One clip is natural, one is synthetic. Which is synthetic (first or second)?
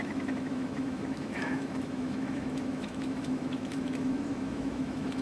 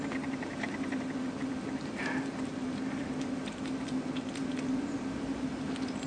first